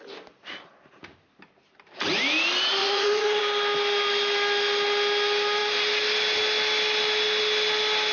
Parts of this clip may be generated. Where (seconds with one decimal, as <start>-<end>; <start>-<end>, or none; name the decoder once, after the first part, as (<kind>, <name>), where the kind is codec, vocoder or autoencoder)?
2.8-3.4 (vocoder, Vocos)

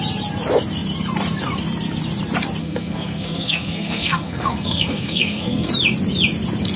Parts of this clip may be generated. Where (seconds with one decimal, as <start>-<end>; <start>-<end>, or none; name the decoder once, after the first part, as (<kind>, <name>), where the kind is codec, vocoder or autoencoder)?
2.6-5.7 (codec, SNAC)

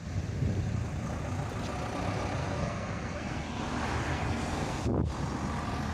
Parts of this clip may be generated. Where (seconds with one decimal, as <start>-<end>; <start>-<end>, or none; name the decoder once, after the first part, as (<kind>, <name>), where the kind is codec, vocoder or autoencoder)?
2.4-3.6 (codec, SNAC); 4.1-5.1

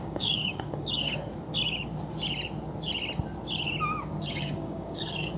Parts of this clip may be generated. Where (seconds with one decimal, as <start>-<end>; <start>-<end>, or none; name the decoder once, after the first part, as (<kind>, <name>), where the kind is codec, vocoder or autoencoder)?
0.0-1.1 (codec, DAC); 4.3-5.4